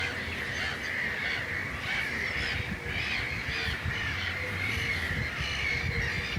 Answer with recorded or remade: recorded